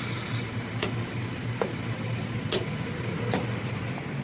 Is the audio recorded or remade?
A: recorded